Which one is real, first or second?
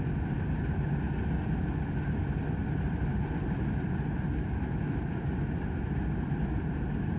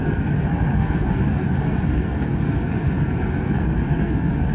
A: first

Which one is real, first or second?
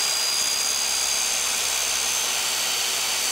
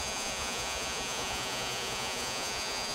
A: first